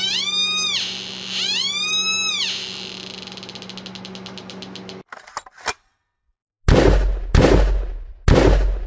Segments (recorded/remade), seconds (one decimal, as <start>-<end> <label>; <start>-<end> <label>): 0.0-8.9 recorded